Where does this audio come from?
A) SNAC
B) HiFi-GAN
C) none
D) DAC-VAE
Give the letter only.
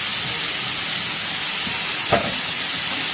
C